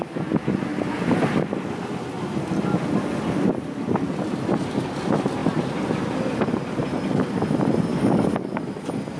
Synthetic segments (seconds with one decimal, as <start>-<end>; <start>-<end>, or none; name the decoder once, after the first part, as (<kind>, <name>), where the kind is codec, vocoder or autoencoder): 7.9-8.6 (codec, DAC)